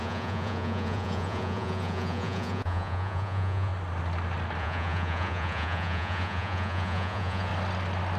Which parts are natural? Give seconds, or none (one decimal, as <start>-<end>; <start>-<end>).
3.7-4.6; 7.5-8.2